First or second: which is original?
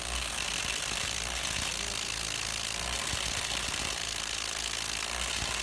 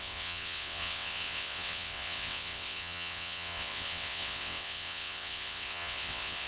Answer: first